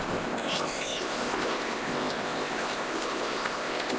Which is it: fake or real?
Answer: fake